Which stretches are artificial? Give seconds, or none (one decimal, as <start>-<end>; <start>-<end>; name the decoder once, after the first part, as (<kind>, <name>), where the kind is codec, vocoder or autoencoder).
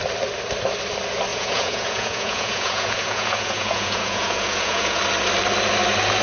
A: 1.3-5.0 (vocoder, Vocos)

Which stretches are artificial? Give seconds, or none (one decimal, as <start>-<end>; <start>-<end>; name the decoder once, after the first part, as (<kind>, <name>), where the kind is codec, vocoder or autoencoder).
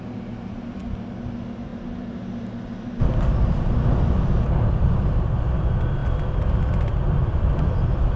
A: none